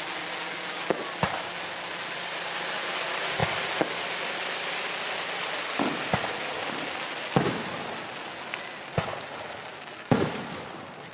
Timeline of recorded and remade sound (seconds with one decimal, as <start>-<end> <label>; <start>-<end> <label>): 0.0-11.1 recorded